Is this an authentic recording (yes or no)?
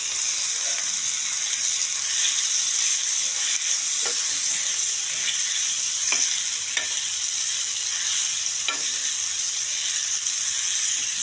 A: yes